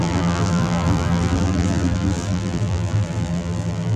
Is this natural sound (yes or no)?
no